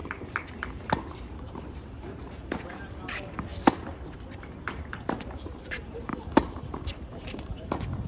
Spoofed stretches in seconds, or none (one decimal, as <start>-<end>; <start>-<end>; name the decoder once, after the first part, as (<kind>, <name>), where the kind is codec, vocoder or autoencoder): 0.0-3.5 (vocoder, BigVGAN v2); 4.3-6.1; 6.7-8.1